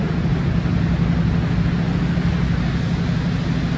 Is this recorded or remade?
recorded